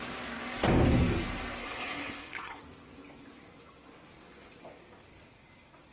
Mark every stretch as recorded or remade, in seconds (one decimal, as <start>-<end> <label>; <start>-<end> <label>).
0.0-1.6 recorded; 1.6-2.6 remade; 2.6-5.9 recorded